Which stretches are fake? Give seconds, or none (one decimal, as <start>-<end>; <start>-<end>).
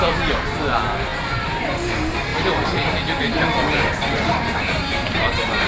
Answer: 1.1-1.6; 2.3-4.5